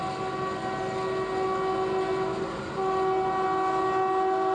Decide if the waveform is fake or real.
real